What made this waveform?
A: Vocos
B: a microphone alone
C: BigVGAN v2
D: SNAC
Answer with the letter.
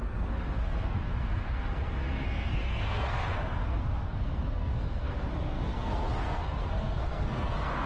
D